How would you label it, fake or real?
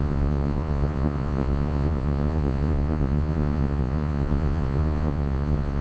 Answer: fake